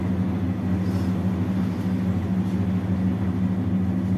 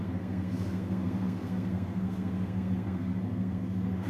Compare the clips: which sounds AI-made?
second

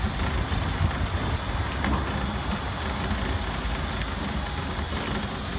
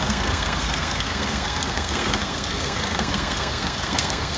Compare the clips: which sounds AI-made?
second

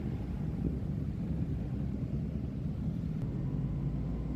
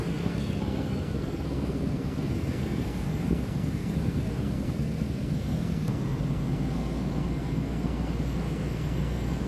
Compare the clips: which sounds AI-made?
second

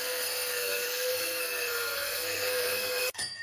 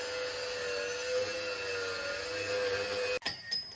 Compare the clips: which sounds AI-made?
first